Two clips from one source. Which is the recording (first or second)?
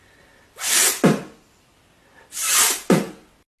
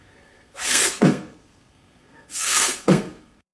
first